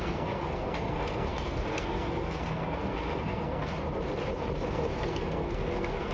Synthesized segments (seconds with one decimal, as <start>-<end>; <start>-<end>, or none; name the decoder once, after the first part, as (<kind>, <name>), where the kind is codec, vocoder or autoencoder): 0.0-3.7 (codec, SNAC); 4.7-6.1